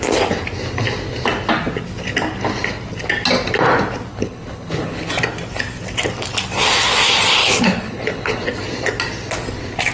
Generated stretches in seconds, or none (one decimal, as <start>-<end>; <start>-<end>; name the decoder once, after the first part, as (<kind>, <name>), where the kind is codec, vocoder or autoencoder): 4.1-5.1 (codec, HILCodec); 7.4-8.5